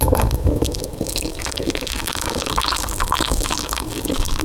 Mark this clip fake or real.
fake